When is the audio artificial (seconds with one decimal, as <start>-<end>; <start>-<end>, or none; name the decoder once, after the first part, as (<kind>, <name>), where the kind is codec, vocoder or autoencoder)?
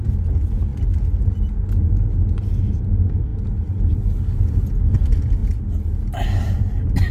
none